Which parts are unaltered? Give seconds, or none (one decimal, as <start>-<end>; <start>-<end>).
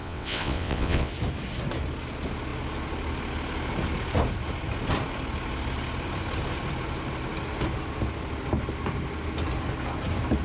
1.1-10.4